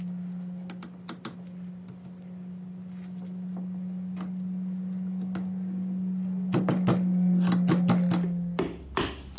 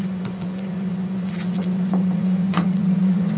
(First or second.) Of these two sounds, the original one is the first